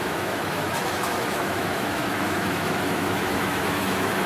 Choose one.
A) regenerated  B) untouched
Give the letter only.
A